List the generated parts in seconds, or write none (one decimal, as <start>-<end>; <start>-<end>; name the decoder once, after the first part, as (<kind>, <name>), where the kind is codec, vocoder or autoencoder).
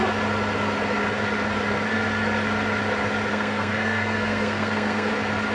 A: 3.3-5.1 (codec, SNAC)